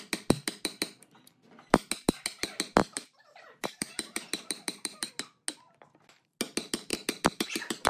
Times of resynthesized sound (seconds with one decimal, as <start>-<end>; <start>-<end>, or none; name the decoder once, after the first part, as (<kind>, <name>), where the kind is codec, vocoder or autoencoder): 2.8-5.1 (vocoder, BigVGAN v2); 6.9-7.9